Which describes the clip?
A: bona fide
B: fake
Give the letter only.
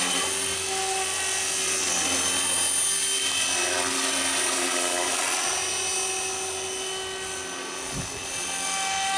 A